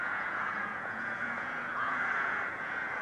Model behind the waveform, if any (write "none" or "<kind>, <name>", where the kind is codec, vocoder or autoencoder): vocoder, Vocos